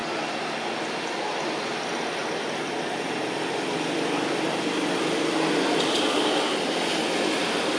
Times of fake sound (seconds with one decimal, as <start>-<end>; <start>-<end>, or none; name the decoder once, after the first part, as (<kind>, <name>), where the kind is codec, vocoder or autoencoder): none